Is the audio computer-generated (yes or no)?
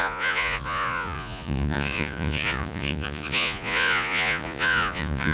yes